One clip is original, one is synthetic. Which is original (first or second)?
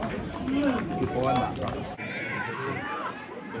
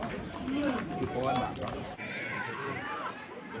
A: first